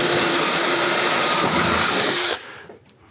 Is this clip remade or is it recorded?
remade